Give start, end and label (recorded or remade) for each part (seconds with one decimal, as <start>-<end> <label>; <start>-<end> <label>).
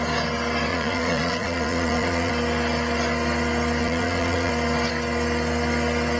0.0-0.7 recorded; 0.7-2.3 remade; 2.3-3.8 recorded; 3.8-4.5 remade; 4.5-6.2 recorded